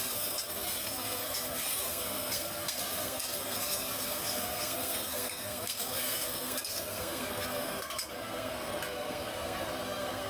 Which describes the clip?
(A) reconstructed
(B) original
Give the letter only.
A